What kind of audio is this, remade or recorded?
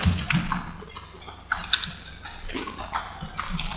recorded